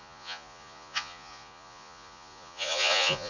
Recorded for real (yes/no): no